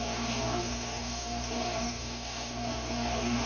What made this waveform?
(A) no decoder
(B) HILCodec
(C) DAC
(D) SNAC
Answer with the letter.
C